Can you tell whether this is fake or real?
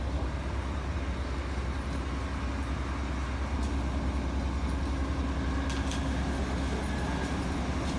real